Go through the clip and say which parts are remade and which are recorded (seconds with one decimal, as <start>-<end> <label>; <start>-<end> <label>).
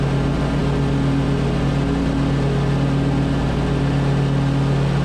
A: 0.0-5.0 recorded